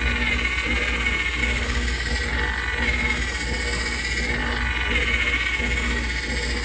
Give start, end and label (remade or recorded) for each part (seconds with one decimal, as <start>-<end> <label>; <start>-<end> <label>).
0.0-1.4 recorded; 1.4-2.1 remade; 2.1-6.6 recorded